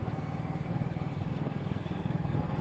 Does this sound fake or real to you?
fake